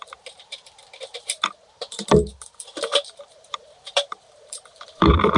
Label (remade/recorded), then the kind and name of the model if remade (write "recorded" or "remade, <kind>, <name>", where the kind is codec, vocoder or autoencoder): remade, vocoder, BigVGAN v2